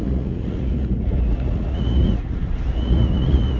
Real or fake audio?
fake